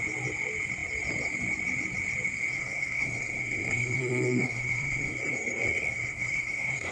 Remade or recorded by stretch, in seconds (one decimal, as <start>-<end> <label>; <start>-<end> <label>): 0.0-2.5 recorded; 2.5-6.9 remade